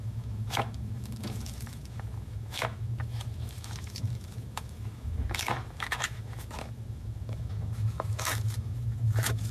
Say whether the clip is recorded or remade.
remade